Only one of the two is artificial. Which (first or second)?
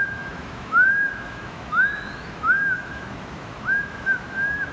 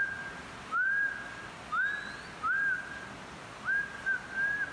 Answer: first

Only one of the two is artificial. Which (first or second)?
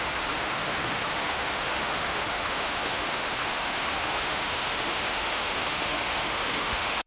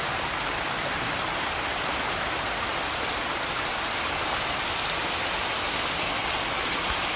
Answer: first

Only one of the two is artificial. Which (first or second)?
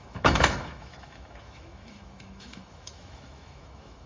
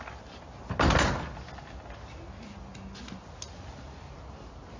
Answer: first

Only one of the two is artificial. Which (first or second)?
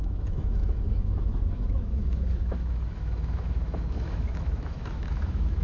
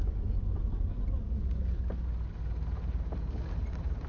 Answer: first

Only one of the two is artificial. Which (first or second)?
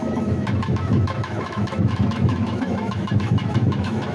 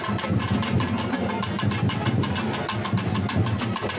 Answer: first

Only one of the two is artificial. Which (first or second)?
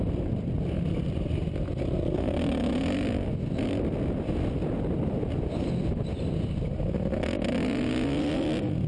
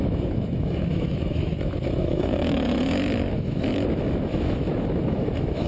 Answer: second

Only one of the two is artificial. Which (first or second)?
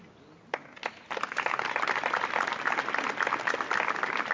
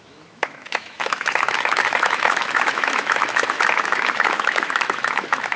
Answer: second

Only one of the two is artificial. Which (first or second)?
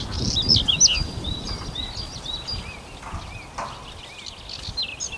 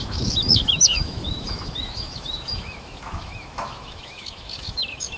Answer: second